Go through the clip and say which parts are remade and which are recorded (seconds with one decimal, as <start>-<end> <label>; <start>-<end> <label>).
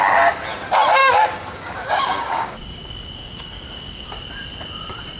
0.0-1.0 recorded; 1.0-4.1 remade; 4.1-5.2 recorded